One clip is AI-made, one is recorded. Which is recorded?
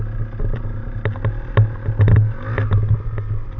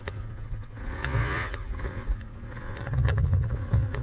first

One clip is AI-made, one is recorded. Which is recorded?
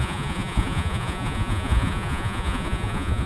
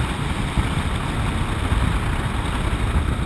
second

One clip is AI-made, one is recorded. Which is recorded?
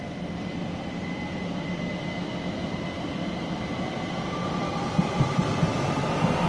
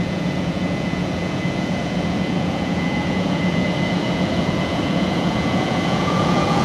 first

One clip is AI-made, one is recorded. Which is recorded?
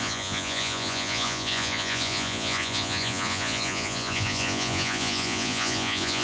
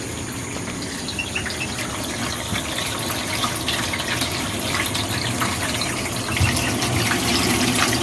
second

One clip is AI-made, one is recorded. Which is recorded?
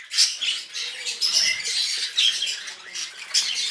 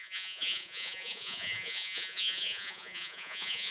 first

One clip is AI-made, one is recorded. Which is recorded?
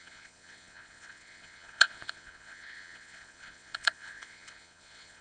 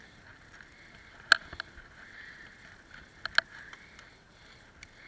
second